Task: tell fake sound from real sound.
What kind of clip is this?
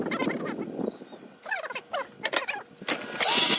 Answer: real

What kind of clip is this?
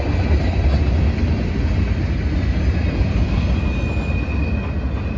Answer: real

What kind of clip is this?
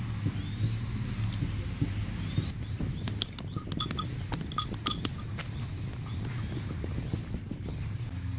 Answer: real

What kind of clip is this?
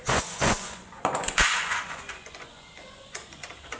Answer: fake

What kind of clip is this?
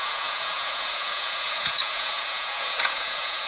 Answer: fake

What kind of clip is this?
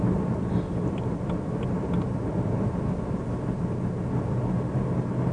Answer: real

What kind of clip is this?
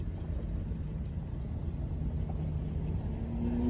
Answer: real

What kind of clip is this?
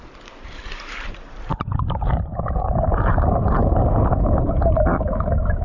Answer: fake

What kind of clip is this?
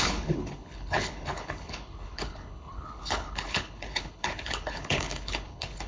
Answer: fake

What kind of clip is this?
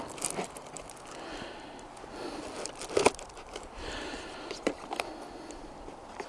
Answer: real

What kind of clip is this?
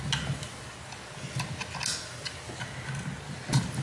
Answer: real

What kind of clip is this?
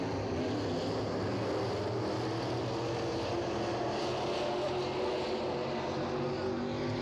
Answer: real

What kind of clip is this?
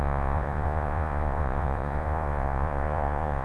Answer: fake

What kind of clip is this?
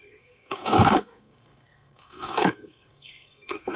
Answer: fake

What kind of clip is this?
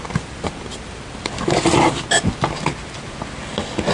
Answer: real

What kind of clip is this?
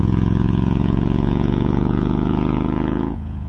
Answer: fake